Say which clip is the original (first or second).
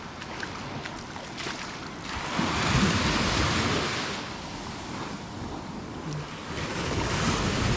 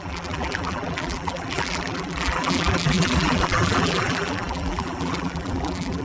first